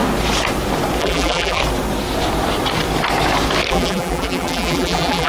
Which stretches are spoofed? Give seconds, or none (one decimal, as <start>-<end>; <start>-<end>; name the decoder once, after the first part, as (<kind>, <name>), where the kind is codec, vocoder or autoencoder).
1.0-1.6 (vocoder, BigVGAN v2); 3.7-5.3